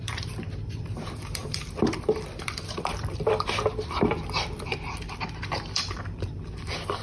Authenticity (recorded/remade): remade